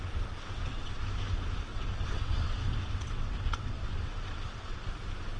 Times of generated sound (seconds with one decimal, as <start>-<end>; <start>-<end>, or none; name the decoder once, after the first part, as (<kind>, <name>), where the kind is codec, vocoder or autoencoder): 0.5-1.0 (vocoder, WaveNeXt); 1.7-4.9